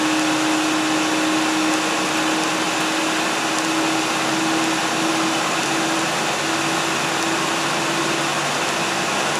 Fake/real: real